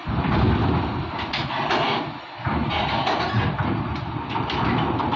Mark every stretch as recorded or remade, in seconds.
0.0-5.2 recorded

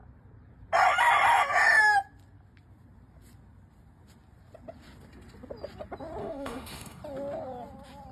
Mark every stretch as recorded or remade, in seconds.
0.0-6.2 recorded; 6.2-7.0 remade; 7.0-8.1 recorded